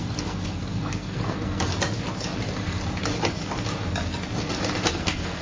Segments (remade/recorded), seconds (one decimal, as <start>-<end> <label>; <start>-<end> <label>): 0.0-1.7 remade; 1.7-4.9 recorded; 4.9-5.4 remade